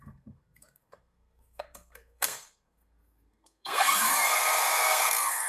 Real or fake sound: fake